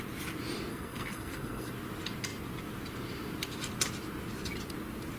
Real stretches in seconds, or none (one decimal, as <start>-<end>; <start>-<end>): 0.0-0.7; 1.7-5.2